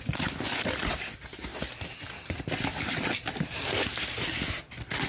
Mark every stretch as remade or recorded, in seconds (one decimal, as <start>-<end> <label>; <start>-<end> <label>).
0.0-5.1 recorded